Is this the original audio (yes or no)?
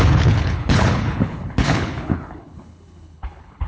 no